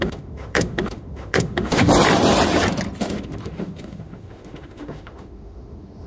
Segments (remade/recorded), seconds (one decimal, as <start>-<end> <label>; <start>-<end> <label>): 0.0-1.9 remade; 1.9-3.0 recorded; 3.0-6.1 remade